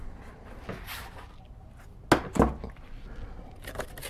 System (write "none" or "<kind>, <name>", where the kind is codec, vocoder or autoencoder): none